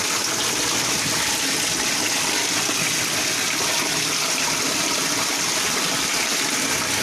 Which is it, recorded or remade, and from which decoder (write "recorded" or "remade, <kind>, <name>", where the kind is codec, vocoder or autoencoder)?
recorded